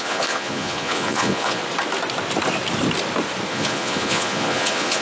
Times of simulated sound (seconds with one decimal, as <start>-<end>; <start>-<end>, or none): 0.0-1.6; 3.5-5.0